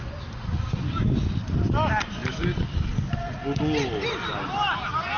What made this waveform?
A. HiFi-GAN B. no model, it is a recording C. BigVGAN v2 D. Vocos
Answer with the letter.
B